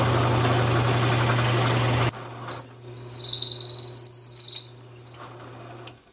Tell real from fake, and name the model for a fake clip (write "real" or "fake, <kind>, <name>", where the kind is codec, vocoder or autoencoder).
real